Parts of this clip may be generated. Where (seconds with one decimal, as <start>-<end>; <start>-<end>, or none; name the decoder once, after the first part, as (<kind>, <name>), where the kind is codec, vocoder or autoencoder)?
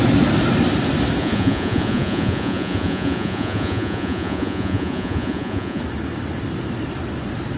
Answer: 1.2-5.8 (vocoder, Vocos)